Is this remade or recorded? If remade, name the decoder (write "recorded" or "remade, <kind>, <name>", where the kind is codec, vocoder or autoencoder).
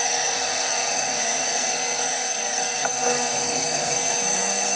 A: remade, codec, SNAC